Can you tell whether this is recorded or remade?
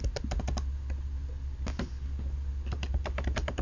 recorded